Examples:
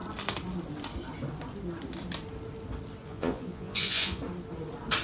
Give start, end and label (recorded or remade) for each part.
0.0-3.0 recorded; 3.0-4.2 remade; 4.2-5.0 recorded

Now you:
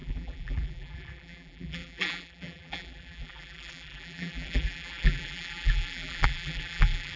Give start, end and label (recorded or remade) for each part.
0.0-7.2 remade